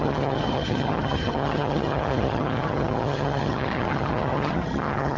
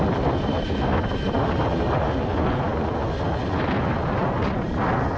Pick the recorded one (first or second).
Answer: second